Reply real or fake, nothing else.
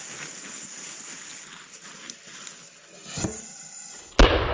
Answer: real